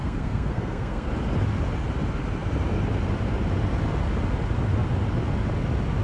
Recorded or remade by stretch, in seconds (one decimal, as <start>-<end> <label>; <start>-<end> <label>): 0.0-1.1 remade; 1.1-6.0 recorded